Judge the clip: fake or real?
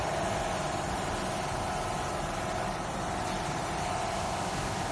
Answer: real